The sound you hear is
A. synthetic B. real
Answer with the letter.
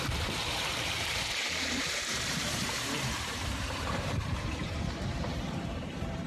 A